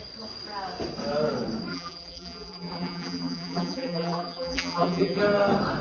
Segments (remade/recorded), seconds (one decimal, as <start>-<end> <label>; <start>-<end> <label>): 0.0-1.7 recorded; 1.7-5.2 remade; 5.2-5.8 recorded